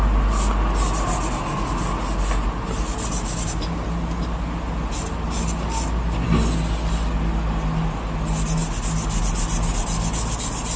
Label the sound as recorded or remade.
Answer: recorded